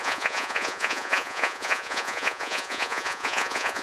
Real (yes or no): no